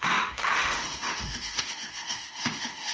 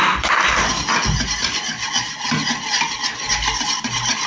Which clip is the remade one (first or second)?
first